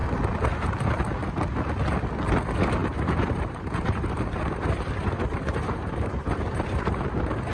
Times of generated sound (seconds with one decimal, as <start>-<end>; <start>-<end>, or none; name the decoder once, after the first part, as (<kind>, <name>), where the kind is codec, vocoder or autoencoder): 2.8-7.5 (vocoder, BigVGAN v2)